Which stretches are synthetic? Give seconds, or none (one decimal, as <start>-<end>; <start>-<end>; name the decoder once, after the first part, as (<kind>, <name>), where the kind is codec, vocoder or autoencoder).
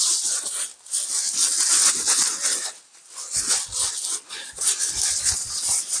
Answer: 0.0-0.7 (vocoder, Vocos); 4.3-4.7; 5.3-6.0